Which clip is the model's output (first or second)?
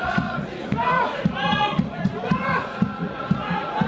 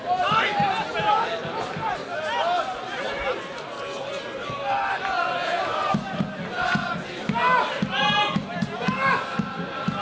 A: first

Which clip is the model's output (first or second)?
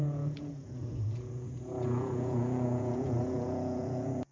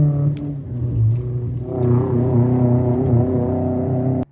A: first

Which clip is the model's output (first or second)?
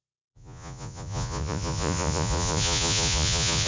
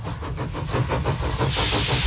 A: first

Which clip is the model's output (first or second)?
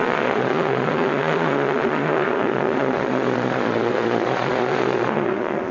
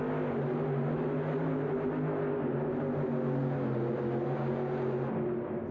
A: first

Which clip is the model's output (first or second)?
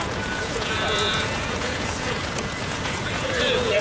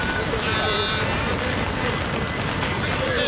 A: first